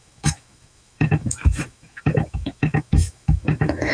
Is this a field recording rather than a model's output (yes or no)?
no